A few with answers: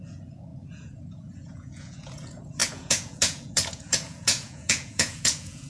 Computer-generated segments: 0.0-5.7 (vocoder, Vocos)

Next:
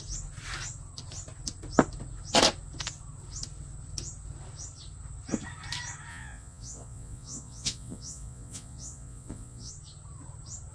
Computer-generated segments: 6.1-9.7 (vocoder, Vocos)

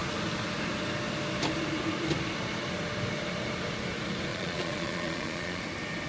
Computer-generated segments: 4.3-5.6 (vocoder, Vocos)

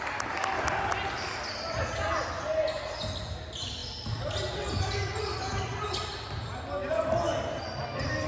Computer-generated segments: none

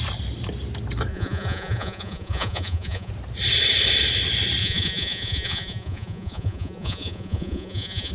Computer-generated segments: 1.1-3.1 (vocoder, Vocos); 4.6-8.1

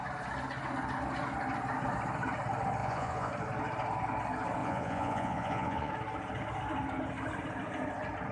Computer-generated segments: 2.8-3.3 (vocoder, Vocos); 4.6-5.9

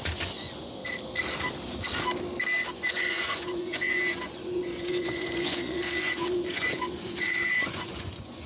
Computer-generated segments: 0.0-0.8 (vocoder, Vocos); 2.7-8.5